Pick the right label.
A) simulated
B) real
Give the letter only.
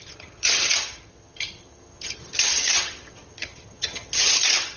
A